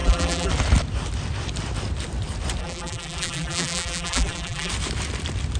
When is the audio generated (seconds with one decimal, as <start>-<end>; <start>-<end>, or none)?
0.0-0.5; 2.6-4.7